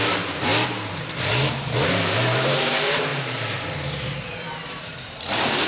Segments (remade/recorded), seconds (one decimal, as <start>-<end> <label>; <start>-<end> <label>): 0.0-0.5 remade; 0.5-1.2 recorded; 1.2-3.1 remade; 3.1-5.3 recorded; 5.3-5.7 remade